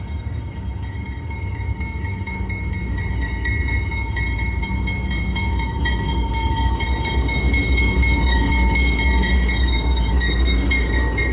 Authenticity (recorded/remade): remade